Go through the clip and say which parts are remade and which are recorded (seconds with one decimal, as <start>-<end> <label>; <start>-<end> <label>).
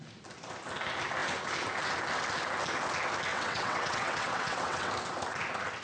0.0-3.3 recorded; 3.3-4.9 remade; 4.9-5.8 recorded